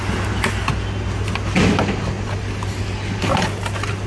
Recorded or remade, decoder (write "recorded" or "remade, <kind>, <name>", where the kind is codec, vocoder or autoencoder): recorded